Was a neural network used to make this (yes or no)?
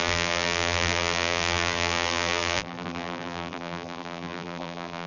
yes